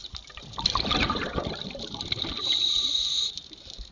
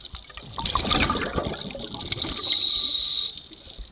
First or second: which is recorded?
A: second